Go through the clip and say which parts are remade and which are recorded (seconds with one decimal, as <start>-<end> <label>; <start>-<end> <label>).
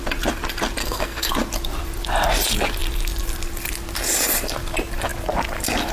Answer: 0.0-0.8 recorded; 0.8-1.3 remade; 1.3-5.9 recorded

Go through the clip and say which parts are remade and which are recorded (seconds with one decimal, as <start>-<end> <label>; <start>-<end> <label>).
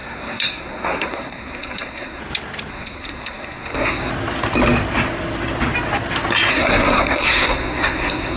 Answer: 0.0-2.2 remade; 2.2-2.7 recorded; 2.7-4.1 remade; 4.1-6.5 recorded; 6.5-8.4 remade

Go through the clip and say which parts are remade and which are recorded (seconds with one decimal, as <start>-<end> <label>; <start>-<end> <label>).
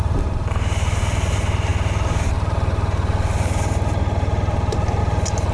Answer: 0.0-5.5 recorded